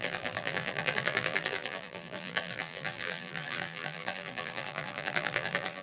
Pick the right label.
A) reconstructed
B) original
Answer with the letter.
A